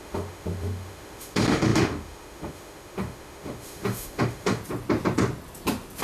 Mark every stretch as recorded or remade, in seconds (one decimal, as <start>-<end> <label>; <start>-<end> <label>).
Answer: 0.0-4.6 remade; 4.6-6.0 recorded